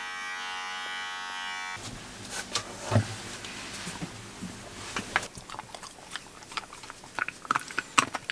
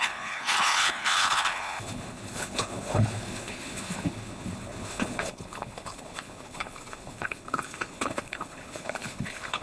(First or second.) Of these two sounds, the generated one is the second